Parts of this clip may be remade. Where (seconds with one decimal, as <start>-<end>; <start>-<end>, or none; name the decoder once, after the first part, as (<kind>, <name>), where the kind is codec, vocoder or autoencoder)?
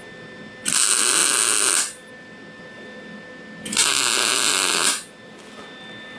none